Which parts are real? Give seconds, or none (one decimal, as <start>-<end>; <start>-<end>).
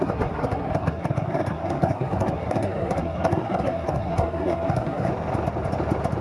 5.1-6.2